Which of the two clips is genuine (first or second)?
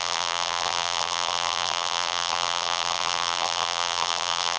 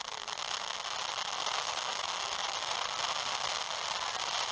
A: second